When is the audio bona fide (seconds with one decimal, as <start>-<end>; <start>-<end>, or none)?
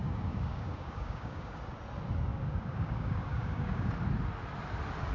1.6-2.3; 3.9-5.1